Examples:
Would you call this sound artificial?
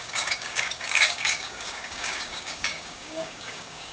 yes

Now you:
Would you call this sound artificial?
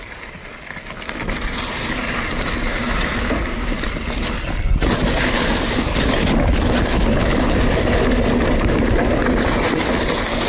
no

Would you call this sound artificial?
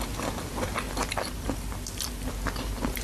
no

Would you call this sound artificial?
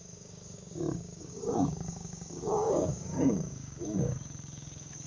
yes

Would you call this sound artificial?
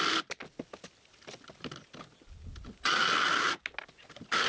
no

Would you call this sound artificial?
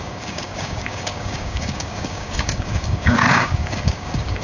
yes